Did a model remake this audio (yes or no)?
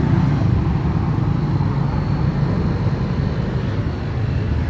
no